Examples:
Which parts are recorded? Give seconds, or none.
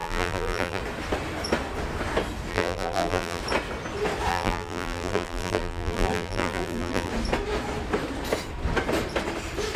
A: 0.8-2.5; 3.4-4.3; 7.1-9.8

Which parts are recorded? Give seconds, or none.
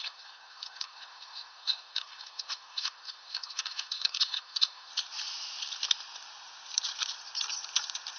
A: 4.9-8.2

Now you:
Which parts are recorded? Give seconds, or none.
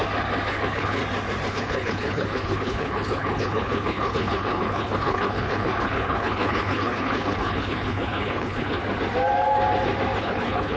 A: 0.0-0.5; 1.0-1.5; 8.8-10.2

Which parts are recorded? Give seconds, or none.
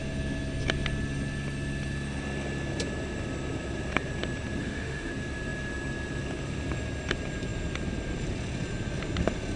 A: 0.0-4.6; 5.1-9.6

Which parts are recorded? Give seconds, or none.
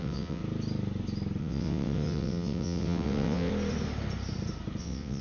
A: 0.4-1.4; 3.5-4.8